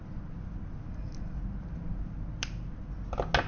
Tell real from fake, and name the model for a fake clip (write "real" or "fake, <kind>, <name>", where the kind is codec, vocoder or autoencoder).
real